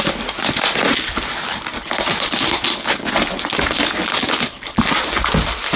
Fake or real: real